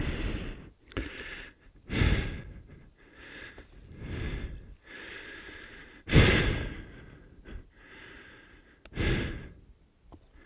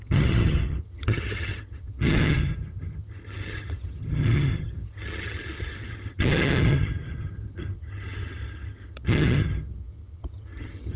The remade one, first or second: second